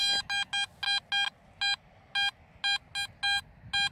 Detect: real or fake real